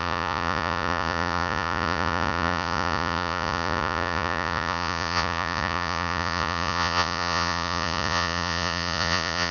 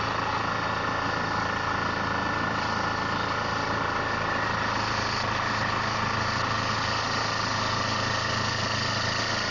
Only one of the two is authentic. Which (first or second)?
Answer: second